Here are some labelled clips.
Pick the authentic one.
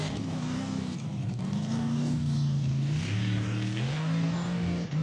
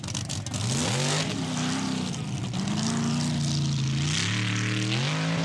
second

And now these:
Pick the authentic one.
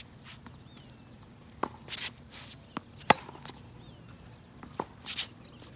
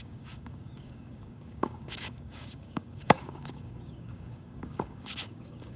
first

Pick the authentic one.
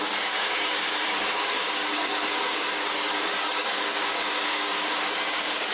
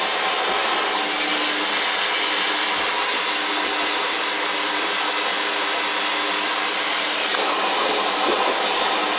second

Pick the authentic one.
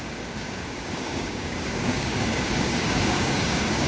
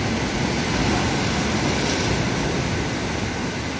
second